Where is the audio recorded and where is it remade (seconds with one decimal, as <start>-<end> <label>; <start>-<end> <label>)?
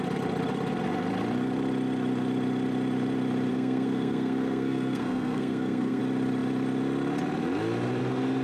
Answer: 0.0-3.5 recorded; 3.5-6.0 remade; 6.0-8.4 recorded